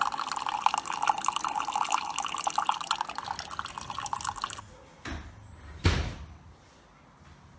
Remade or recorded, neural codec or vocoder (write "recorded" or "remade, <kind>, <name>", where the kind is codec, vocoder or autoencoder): recorded